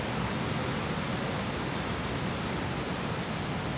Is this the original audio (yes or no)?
yes